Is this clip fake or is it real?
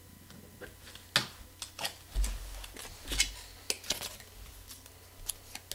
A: real